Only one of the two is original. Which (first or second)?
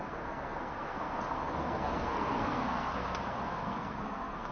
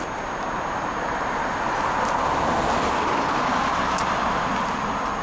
second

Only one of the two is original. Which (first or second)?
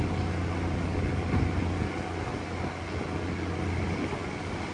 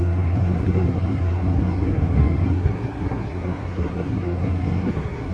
first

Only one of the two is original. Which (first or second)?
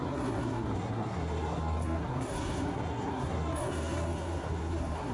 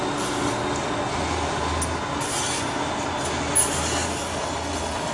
second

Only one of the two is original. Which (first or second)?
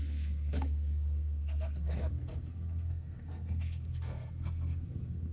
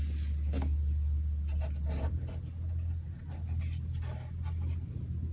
second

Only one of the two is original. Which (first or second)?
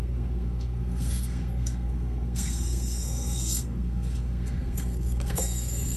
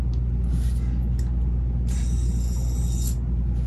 second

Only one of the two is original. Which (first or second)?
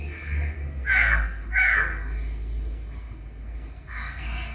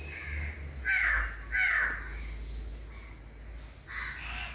second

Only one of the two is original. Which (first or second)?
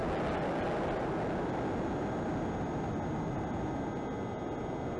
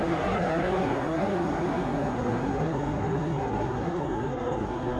first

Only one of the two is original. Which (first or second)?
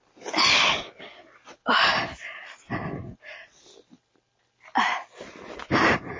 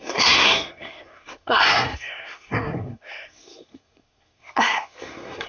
first